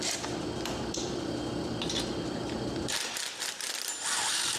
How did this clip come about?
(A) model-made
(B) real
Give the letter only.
B